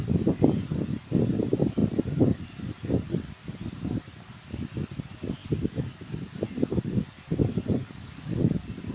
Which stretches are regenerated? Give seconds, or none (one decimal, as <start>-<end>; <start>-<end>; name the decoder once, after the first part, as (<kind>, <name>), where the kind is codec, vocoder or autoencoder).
5.4-5.9 (codec, DAC); 7.8-8.4